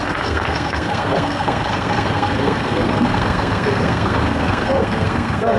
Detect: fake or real fake